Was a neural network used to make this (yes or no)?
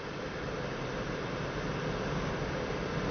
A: no